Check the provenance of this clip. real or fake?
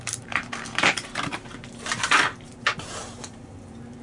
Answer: fake